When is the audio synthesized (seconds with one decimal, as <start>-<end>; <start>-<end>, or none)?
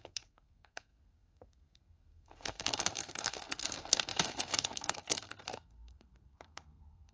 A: 0.0-7.1